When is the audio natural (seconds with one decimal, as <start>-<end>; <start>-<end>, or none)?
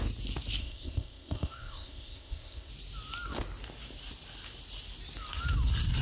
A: 0.0-0.6; 2.7-6.0